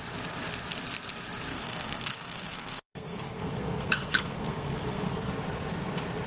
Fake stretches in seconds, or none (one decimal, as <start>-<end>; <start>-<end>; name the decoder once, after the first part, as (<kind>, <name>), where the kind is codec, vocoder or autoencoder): 1.5-5.3 (codec, SNAC)